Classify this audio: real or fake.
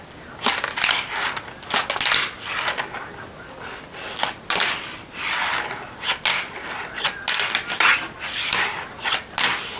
real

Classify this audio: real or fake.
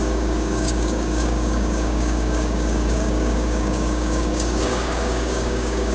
fake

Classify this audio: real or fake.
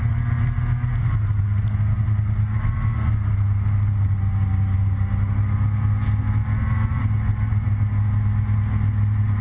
real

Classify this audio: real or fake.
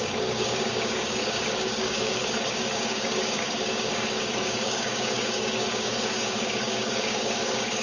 fake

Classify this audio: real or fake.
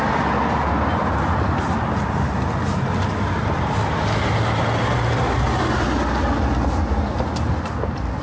real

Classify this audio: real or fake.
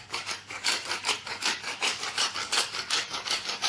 fake